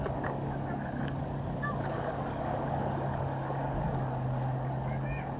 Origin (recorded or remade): remade